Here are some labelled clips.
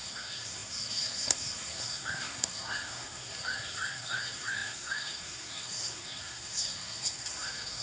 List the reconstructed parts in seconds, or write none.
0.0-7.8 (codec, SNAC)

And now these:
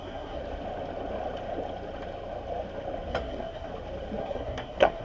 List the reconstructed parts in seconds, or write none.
0.0-0.4 (codec, SNAC); 3.1-3.7; 4.2-5.0

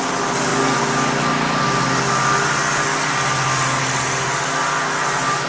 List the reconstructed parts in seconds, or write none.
none

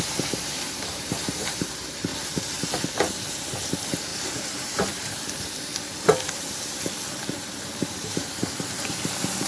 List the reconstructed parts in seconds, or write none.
0.0-2.1 (vocoder, BigVGAN v2); 3.1-5.7; 7.8-9.5

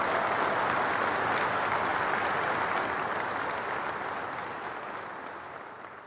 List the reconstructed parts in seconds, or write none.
none

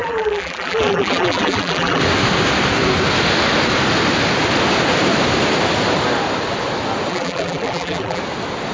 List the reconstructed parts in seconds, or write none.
0.0-2.0 (vocoder, BigVGAN v2); 7.1-8.2

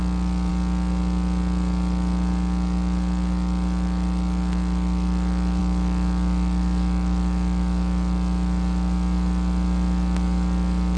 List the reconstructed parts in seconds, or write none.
none

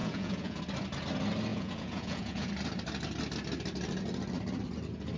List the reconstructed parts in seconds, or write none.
0.0-0.6 (vocoder, Vocos); 1.5-2.5